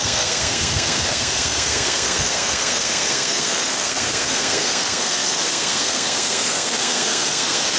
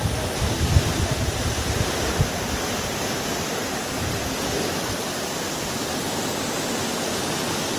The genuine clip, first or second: second